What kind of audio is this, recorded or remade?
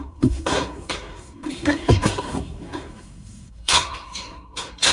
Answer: remade